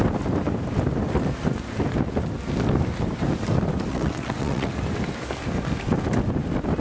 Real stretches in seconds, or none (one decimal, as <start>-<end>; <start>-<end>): 0.0-3.9; 4.7-6.8